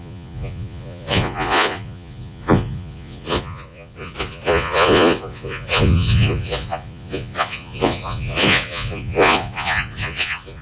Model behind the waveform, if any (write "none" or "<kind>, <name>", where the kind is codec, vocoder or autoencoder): vocoder, Vocos